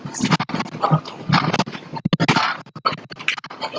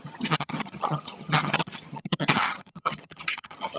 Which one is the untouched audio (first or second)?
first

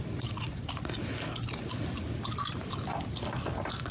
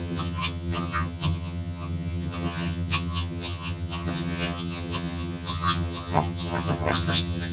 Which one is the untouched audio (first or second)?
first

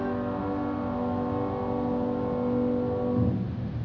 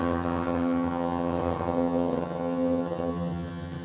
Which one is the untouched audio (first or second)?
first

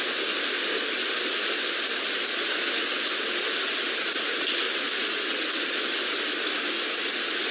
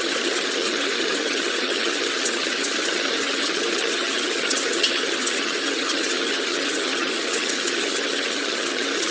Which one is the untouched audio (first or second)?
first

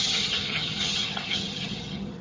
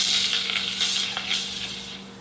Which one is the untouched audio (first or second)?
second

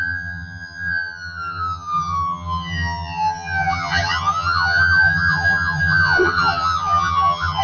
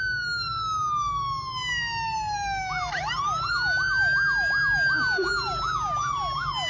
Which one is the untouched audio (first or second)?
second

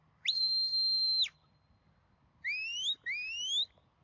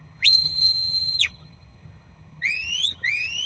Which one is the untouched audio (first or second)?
first